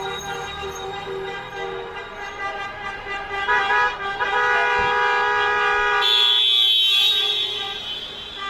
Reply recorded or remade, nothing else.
recorded